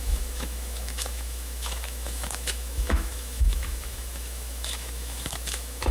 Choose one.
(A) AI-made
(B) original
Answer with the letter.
A